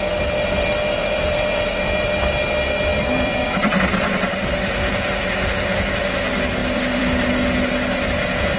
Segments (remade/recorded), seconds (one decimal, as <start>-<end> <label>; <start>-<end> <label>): 0.0-1.0 recorded; 1.0-2.5 remade; 2.5-2.9 recorded; 2.9-3.8 remade; 3.8-6.6 recorded; 6.6-7.3 remade; 7.3-8.6 recorded